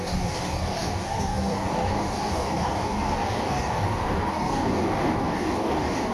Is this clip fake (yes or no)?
yes